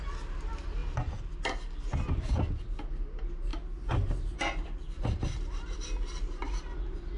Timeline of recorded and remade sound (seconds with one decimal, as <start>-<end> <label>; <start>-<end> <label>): 0.0-7.2 recorded